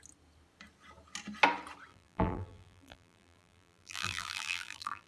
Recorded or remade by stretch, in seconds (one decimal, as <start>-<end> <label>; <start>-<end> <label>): 0.0-1.9 recorded; 1.9-5.1 remade